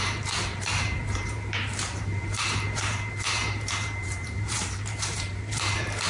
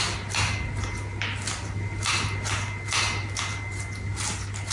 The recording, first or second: second